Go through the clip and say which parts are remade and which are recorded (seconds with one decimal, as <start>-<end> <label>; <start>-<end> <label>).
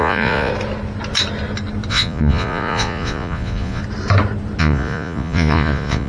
0.0-0.5 remade; 0.5-1.9 recorded; 1.9-3.8 remade; 3.8-4.6 recorded; 4.6-6.1 remade